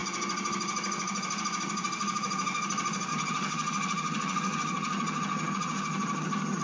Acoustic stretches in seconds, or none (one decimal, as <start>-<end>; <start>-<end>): 0.0-3.1